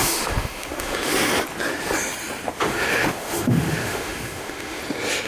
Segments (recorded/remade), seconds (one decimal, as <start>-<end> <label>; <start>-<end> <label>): 0.0-1.3 remade; 1.3-2.6 recorded; 2.6-4.8 remade; 4.8-5.3 recorded